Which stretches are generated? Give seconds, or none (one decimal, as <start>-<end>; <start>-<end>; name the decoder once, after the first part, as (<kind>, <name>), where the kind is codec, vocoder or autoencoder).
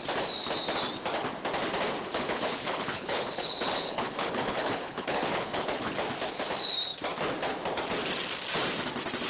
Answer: 2.0-6.0 (codec, HILCodec)